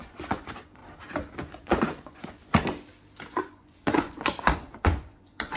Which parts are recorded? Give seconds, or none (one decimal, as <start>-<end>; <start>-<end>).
0.8-1.4; 2.4-3.3